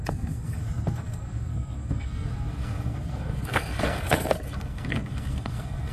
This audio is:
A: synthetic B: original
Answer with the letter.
A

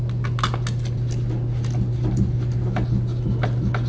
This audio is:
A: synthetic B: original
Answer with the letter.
B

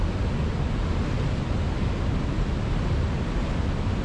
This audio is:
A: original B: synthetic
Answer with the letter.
A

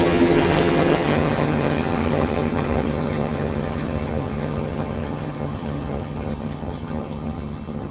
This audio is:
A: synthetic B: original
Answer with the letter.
A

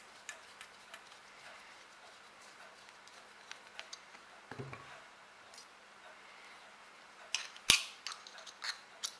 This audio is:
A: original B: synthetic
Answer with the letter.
A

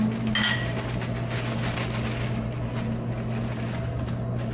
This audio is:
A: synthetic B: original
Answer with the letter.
B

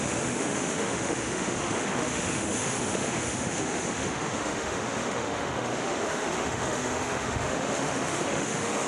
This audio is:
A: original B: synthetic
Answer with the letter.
B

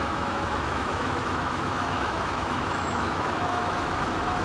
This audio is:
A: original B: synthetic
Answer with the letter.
B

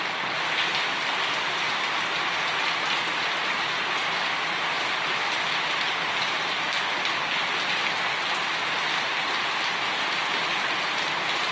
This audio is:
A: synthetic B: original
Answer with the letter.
B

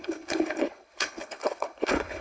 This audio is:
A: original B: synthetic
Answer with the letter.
B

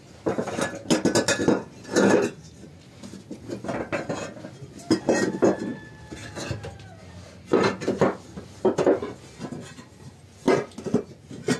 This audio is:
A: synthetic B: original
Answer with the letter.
B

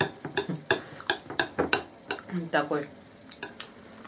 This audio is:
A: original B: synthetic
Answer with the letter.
A